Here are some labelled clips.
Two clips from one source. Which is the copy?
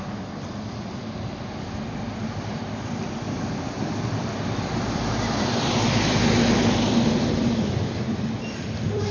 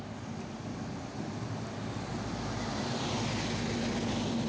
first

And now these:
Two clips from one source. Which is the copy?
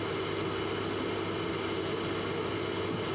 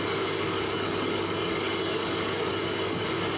second